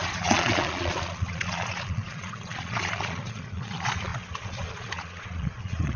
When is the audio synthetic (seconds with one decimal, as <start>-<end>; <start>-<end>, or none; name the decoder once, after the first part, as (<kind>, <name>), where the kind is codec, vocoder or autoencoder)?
0.0-6.0 (vocoder, Vocos)